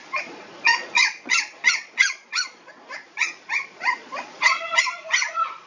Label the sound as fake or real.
fake